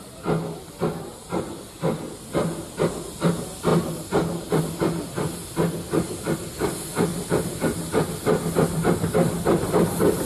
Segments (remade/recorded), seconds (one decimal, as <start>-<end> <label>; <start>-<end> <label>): 0.0-3.7 recorded; 3.7-4.6 remade; 4.6-7.1 recorded; 7.1-8.1 remade; 8.1-10.3 recorded